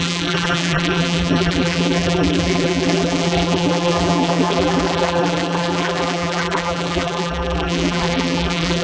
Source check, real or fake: fake